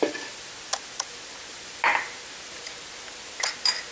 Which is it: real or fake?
real